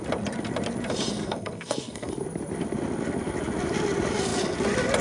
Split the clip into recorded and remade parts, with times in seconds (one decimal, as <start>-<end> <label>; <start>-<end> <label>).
0.0-1.2 recorded; 1.2-2.1 remade; 2.1-5.0 recorded